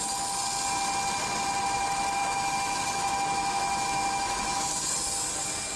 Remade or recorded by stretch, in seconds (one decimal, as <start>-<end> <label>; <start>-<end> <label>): 0.0-2.2 recorded; 2.2-4.8 remade; 4.8-5.8 recorded